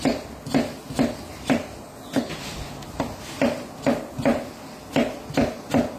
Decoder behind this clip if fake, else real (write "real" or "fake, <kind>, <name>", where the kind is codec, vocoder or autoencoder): real